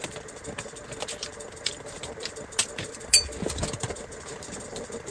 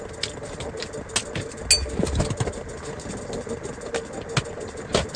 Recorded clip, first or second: second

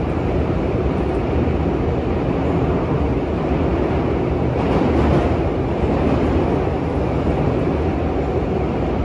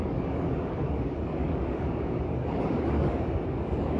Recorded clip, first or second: first